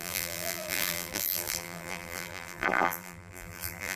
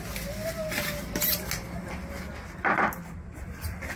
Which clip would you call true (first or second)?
second